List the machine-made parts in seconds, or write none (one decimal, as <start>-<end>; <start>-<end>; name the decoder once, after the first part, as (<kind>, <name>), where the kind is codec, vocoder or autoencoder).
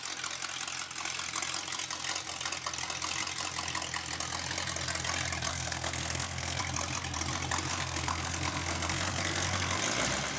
5.5-6.6 (codec, SNAC); 7.7-9.8